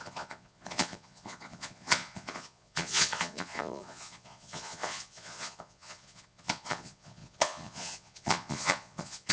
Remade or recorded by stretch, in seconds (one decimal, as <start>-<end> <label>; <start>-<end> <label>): 0.0-9.3 remade

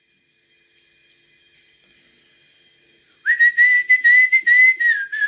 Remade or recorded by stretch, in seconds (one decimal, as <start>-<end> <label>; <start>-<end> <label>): 0.0-5.3 recorded

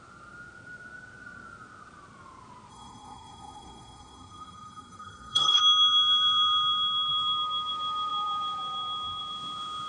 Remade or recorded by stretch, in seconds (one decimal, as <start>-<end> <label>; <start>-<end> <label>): 0.0-2.7 recorded; 2.7-5.6 remade; 5.6-9.9 recorded

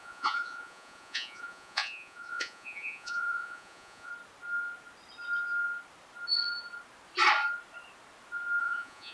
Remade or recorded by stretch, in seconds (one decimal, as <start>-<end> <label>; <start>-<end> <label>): 0.0-4.1 remade; 4.1-8.6 recorded; 8.6-9.1 remade

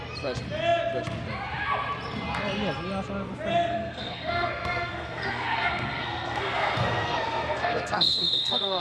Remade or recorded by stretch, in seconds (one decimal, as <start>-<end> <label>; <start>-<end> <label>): 0.0-3.5 recorded; 3.5-8.8 remade

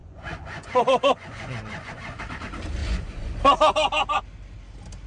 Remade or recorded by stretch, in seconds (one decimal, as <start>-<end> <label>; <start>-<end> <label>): 0.0-2.2 remade; 2.2-2.8 recorded; 2.8-3.4 remade; 3.4-5.1 recorded

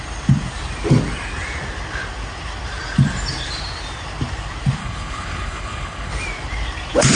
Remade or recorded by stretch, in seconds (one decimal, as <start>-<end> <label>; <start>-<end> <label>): 0.0-4.8 recorded; 4.8-6.1 remade; 6.1-7.1 recorded

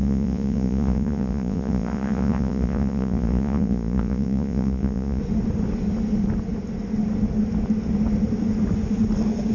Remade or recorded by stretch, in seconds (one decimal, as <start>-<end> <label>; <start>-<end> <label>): 0.0-5.2 remade; 5.2-9.5 recorded